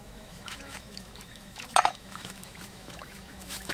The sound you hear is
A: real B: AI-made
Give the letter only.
B